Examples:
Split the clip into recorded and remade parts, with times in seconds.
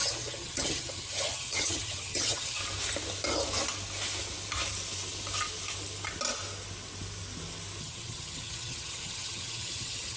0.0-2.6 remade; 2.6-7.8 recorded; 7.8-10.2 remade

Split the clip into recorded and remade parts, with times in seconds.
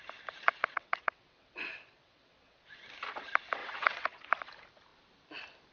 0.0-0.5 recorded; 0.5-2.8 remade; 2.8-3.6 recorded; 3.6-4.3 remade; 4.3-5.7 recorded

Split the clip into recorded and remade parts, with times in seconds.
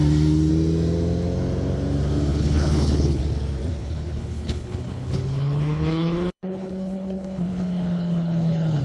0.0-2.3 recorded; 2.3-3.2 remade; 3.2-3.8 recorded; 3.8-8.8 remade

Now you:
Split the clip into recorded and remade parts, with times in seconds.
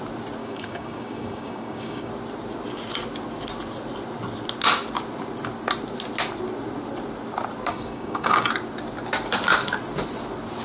0.0-0.4 recorded; 0.4-2.1 remade; 2.1-7.7 recorded; 7.7-8.5 remade; 8.5-10.6 recorded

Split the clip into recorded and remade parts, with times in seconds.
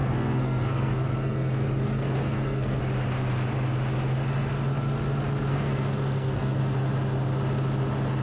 0.0-2.8 remade; 2.8-5.5 recorded; 5.5-6.6 remade; 6.6-8.2 recorded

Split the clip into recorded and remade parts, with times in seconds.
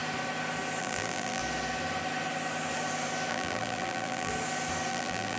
0.0-0.8 recorded; 0.8-1.4 remade; 1.4-3.3 recorded; 3.3-4.3 remade; 4.3-4.9 recorded; 4.9-5.4 remade